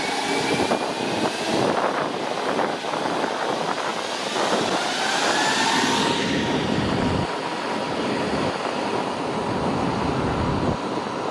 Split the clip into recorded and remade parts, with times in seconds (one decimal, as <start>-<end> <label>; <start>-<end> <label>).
0.0-11.3 recorded